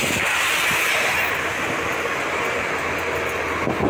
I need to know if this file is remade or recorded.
recorded